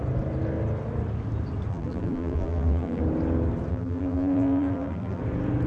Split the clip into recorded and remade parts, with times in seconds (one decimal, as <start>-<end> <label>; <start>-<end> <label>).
0.0-1.7 recorded; 1.7-3.0 remade; 3.0-3.7 recorded; 3.7-5.2 remade; 5.2-5.7 recorded